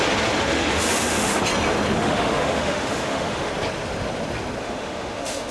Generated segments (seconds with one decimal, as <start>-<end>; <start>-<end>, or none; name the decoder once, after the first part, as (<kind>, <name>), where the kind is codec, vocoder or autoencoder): 0.5-1.4 (autoencoder, DAC-VAE); 2.0-3.5; 4.6-5.5